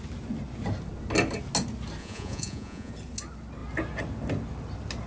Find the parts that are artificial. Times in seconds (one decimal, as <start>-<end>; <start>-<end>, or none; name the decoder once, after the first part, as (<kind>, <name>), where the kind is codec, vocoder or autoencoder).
2.0-2.9 (vocoder, Vocos)